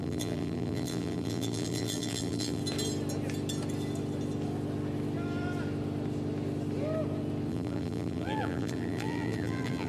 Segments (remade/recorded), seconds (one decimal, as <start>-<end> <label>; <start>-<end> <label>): 0.0-2.6 remade; 2.6-7.5 recorded; 7.5-9.9 remade

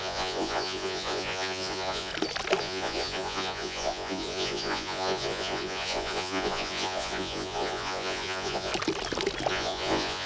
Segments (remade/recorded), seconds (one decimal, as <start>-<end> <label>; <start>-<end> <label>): 0.0-2.1 remade; 2.1-2.6 recorded; 2.6-8.7 remade; 8.7-9.5 recorded; 9.5-10.3 remade